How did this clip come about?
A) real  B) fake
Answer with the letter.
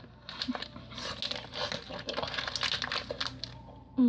A